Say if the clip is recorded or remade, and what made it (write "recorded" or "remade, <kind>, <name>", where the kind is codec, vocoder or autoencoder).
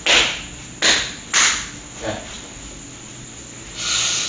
recorded